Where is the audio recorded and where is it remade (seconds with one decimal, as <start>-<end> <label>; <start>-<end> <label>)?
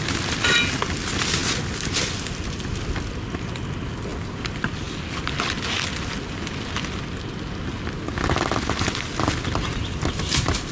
0.0-10.7 recorded